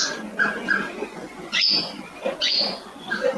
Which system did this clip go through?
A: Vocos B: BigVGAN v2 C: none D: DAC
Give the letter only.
A